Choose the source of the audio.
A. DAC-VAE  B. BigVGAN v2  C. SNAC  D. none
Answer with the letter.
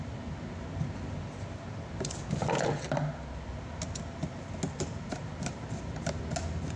D